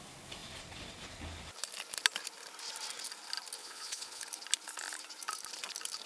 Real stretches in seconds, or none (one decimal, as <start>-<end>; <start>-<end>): 0.0-3.6; 4.2-6.1